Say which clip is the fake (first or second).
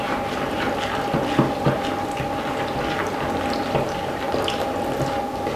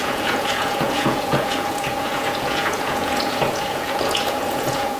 second